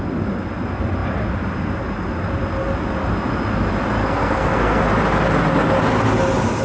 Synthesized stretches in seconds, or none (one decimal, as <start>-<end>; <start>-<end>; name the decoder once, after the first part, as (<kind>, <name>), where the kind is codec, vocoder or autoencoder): 4.0-4.8 (codec, SNAC)